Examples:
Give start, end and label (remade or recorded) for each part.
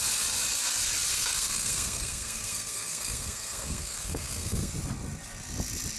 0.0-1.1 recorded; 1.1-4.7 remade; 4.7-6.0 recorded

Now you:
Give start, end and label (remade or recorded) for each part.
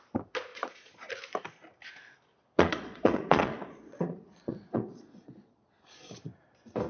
0.0-0.5 recorded; 0.5-1.1 remade; 1.1-2.3 recorded; 2.3-5.9 remade; 5.9-6.9 recorded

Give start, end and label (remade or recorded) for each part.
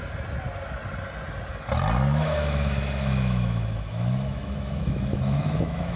0.0-2.1 recorded; 2.1-6.0 remade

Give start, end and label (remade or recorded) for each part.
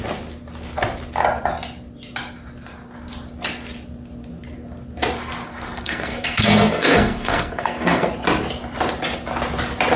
0.0-5.5 recorded; 5.5-8.1 remade; 8.1-10.0 recorded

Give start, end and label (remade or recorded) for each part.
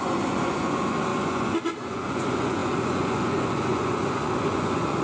0.0-5.0 remade